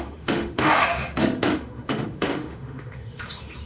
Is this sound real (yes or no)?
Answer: no